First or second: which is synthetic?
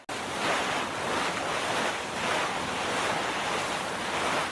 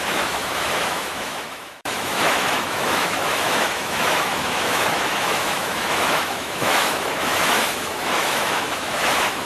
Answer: second